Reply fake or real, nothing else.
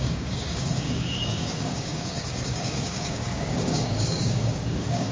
fake